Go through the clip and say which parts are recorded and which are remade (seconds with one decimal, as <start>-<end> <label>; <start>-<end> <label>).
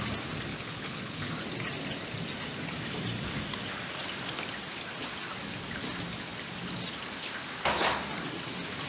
0.0-0.5 recorded; 0.5-1.3 remade; 1.3-8.9 recorded